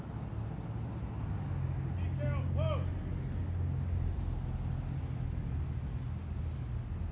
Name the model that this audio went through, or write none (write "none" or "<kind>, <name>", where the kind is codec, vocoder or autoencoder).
none